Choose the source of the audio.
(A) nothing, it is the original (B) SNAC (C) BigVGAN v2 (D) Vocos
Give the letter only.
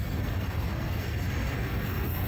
B